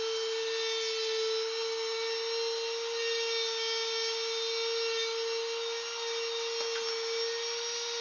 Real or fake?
real